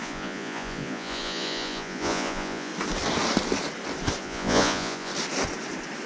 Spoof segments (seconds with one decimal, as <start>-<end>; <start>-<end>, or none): 0.0-2.7; 4.2-5.1